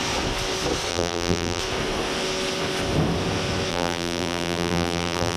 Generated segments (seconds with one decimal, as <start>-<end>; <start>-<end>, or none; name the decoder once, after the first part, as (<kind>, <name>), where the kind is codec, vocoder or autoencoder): 0.9-1.6 (vocoder, BigVGAN v2); 3.7-5.4